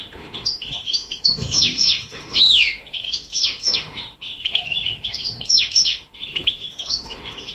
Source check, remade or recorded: remade